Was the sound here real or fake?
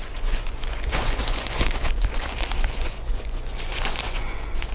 fake